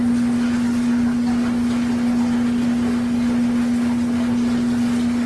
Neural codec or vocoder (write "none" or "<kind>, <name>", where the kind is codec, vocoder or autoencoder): none